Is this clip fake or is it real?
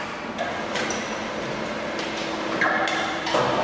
fake